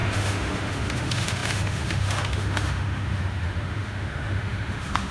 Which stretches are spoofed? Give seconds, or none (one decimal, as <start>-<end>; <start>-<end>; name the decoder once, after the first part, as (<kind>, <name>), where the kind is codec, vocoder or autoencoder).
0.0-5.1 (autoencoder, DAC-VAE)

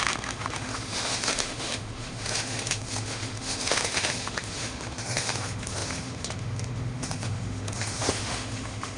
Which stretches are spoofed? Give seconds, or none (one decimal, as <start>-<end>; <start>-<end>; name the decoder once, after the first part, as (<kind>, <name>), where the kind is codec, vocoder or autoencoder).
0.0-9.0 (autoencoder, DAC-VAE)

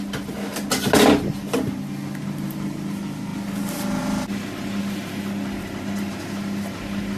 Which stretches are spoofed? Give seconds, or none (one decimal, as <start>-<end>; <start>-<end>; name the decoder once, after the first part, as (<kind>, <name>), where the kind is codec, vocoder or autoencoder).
none

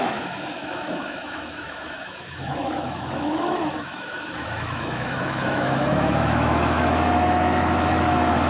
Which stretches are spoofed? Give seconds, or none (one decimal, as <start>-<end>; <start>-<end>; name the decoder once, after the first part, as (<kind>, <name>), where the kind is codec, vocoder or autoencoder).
0.0-8.5 (autoencoder, DAC-VAE)